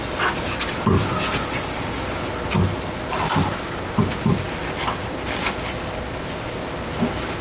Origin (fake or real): real